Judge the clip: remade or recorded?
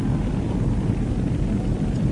recorded